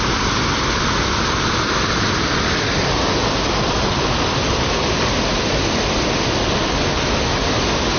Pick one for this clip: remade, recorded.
recorded